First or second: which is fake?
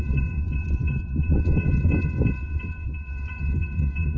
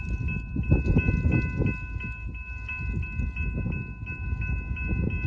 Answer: first